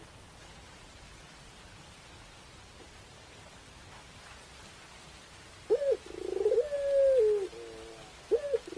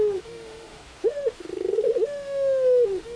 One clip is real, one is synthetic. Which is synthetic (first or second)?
second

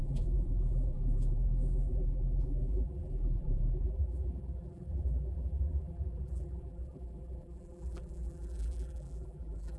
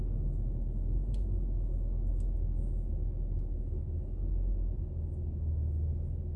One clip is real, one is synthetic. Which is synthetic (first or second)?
first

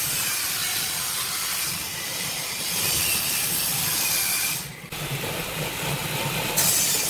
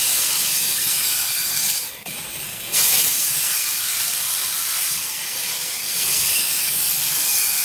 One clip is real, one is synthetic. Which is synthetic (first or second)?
second